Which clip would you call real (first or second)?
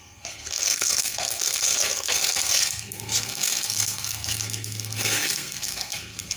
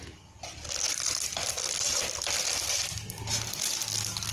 second